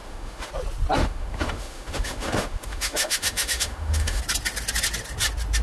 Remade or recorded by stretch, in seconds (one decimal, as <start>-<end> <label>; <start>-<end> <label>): 0.0-0.5 remade; 0.5-1.0 recorded; 1.0-4.2 remade; 4.2-5.6 recorded

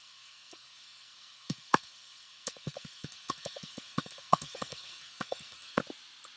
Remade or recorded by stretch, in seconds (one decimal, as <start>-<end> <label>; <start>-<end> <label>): 0.0-5.8 remade; 5.8-6.4 recorded